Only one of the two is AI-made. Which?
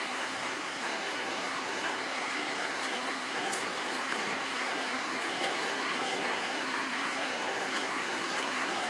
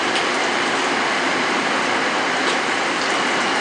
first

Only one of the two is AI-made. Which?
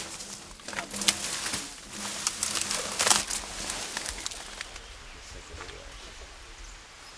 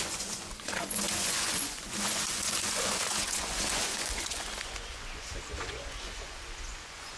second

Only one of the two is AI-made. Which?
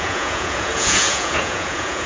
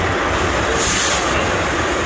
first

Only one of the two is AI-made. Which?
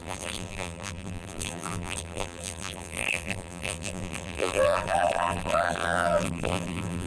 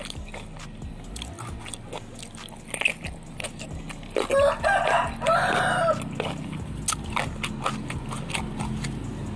first